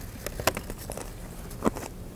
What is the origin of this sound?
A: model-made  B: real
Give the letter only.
B